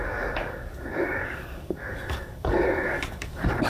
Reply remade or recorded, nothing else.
remade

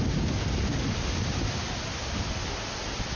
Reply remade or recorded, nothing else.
recorded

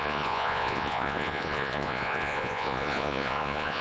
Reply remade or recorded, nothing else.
remade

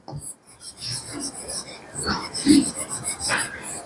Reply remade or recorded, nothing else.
recorded